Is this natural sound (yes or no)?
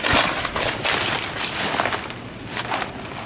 yes